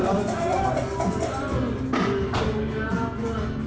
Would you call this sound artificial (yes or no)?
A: no